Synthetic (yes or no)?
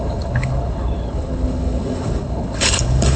yes